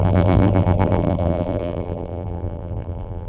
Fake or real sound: fake